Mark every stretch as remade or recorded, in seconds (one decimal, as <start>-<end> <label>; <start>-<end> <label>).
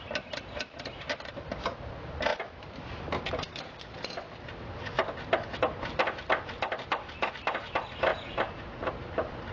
0.0-8.1 recorded; 8.1-8.9 remade; 8.9-9.5 recorded